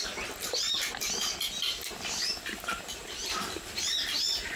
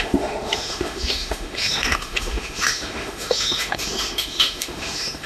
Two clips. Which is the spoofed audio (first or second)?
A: second